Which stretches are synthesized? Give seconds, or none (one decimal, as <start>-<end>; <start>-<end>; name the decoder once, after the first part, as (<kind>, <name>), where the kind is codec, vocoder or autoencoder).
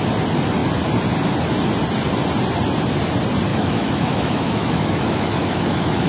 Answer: 3.5-6.1 (autoencoder, DAC-VAE)